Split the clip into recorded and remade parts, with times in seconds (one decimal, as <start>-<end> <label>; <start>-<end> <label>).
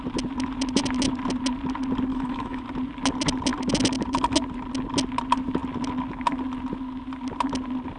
0.0-2.1 recorded; 2.1-2.6 remade; 2.6-8.0 recorded